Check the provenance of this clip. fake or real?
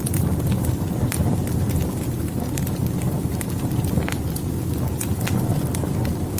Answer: real